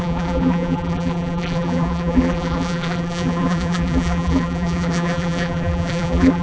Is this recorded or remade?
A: remade